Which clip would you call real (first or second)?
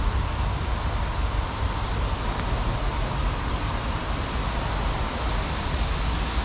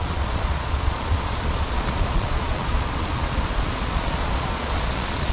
first